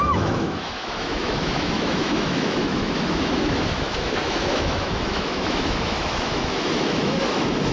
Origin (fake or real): fake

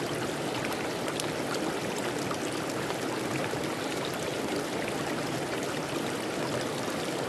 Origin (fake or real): real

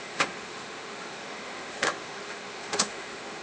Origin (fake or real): fake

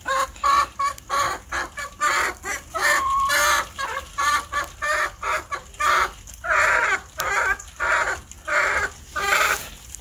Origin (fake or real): real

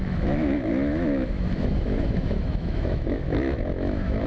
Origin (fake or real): fake